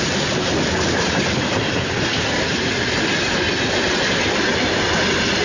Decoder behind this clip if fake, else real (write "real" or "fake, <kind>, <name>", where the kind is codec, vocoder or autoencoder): real